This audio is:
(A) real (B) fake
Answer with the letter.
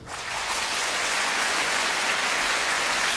B